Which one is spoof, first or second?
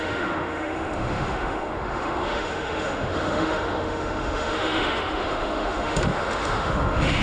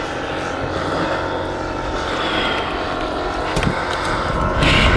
first